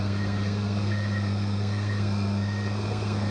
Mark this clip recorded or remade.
remade